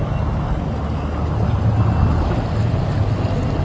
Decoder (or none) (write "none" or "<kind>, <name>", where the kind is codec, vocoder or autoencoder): none